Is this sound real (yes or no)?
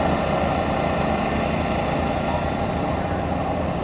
yes